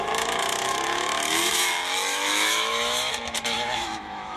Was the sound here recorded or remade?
remade